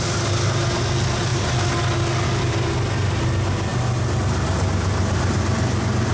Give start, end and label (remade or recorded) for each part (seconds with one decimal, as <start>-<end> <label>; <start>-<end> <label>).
0.0-6.1 recorded